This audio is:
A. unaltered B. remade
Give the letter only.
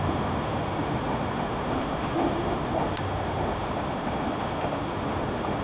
B